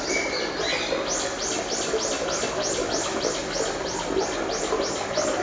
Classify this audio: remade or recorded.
recorded